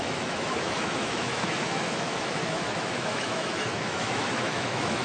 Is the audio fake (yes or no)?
yes